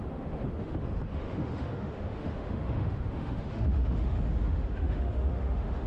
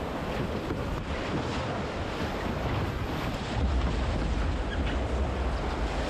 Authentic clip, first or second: second